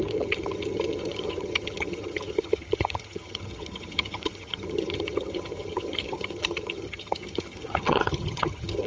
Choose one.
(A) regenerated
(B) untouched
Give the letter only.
A